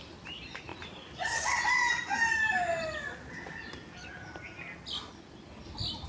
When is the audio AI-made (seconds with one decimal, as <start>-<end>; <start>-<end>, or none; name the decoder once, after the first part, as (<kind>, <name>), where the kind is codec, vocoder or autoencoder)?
none